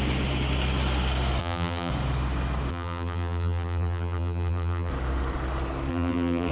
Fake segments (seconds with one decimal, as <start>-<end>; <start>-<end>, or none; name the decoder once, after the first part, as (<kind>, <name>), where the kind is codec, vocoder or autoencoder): 1.4-1.9 (vocoder, BigVGAN v2); 2.7-4.9; 5.9-6.5